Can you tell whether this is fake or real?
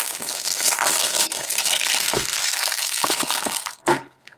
fake